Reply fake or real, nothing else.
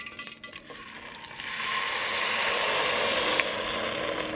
real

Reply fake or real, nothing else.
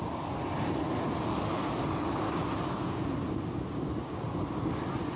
real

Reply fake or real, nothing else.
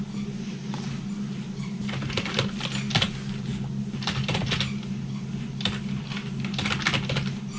real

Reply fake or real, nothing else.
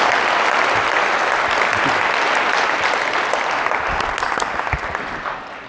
real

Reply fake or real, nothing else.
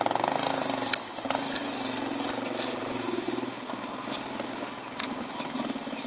real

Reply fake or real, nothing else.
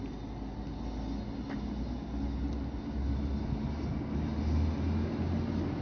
real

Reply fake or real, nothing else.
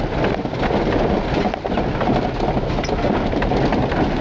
real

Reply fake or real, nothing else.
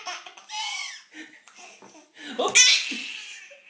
real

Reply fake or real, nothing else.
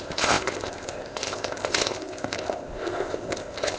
fake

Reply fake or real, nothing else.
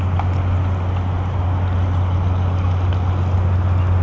real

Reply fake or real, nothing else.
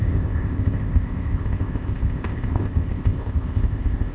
fake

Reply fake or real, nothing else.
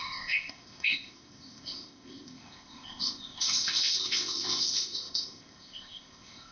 fake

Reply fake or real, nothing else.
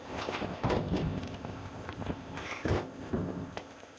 fake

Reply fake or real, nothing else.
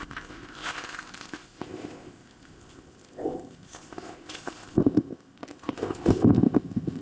fake